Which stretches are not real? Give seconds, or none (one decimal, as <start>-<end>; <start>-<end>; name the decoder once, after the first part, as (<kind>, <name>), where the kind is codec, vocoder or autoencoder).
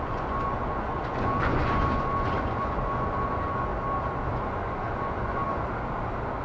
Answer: 0.0-3.7 (vocoder, Vocos); 4.3-5.4